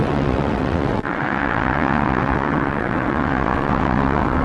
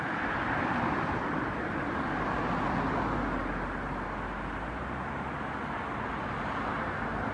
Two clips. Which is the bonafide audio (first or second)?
second